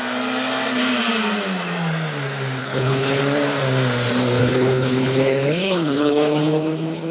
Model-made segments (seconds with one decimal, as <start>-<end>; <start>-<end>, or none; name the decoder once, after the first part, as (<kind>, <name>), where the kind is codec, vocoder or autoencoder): 2.6-3.2 (codec, HILCodec); 4.4-7.1